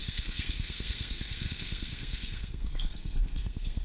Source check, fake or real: fake